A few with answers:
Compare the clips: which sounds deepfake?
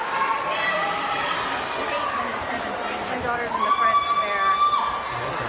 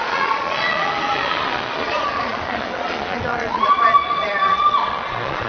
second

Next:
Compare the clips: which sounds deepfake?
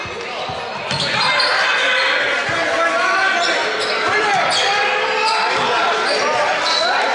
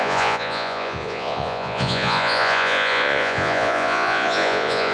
second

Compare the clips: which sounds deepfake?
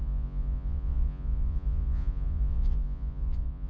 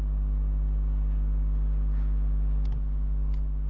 first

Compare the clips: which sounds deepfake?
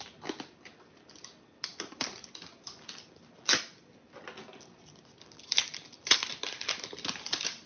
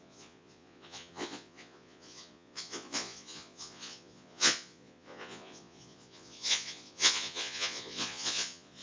second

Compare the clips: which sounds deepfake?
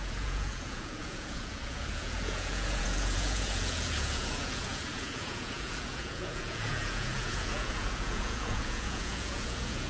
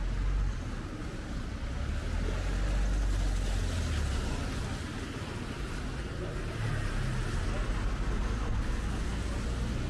first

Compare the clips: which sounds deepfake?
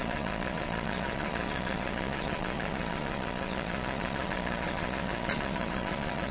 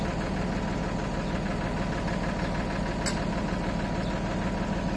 first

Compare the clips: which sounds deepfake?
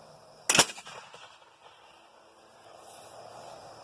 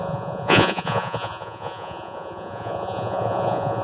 second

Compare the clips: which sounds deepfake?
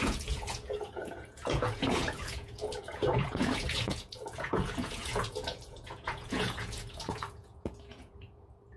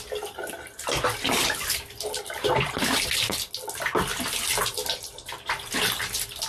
first